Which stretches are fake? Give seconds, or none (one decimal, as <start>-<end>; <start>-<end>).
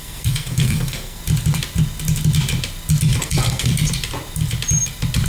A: 0.0-1.2; 3.2-3.7